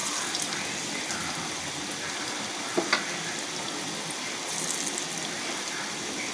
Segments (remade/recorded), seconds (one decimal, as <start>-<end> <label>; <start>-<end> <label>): 0.0-6.3 recorded